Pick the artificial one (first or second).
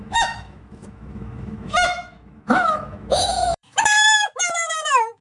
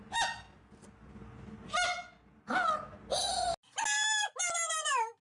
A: first